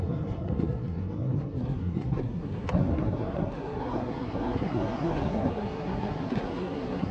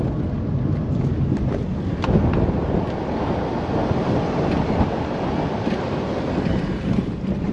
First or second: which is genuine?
second